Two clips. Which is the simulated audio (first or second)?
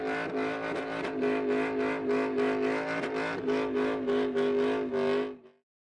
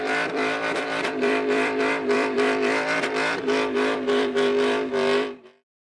second